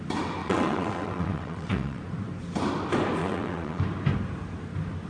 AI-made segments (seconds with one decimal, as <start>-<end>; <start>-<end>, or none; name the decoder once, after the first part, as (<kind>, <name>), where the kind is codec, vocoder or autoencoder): 0.4-2.0 (vocoder, WaveNeXt); 3.2-3.8